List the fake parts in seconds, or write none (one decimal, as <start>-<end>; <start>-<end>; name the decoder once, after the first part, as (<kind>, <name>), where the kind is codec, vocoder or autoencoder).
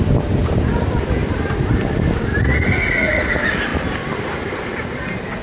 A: 2.3-3.3 (vocoder, Vocos)